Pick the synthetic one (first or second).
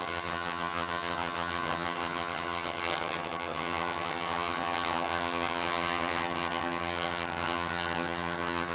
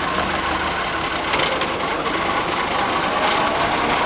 first